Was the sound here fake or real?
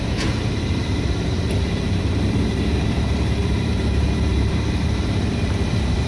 fake